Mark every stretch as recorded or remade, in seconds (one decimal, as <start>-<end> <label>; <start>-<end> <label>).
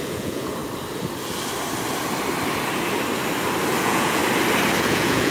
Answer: 0.0-0.6 remade; 0.6-3.8 recorded; 3.8-4.2 remade; 4.2-4.8 recorded; 4.8-5.3 remade